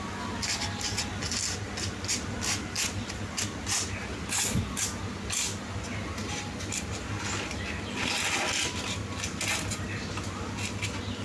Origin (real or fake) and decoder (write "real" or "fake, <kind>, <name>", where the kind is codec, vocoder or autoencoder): real